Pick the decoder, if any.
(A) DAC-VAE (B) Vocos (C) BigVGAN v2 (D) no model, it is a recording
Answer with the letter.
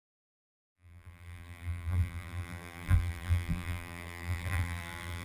C